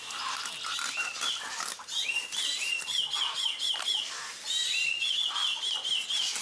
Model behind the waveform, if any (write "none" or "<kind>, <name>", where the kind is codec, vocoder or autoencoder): none